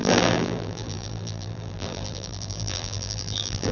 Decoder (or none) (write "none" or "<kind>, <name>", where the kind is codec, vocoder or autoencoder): vocoder, BigVGAN v2